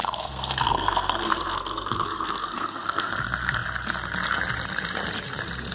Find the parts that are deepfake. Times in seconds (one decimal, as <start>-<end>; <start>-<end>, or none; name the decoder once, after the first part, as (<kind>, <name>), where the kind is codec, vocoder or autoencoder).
0.0-3.1 (codec, SNAC)